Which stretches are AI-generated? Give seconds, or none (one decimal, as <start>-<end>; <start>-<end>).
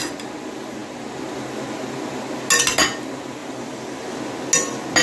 3.4-4.2